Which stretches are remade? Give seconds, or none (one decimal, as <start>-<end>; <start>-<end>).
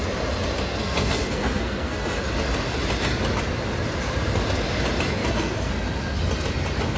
0.7-2.2; 5.2-5.7